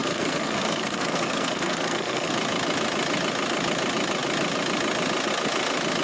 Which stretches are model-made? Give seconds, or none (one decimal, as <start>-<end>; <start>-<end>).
0.0-2.3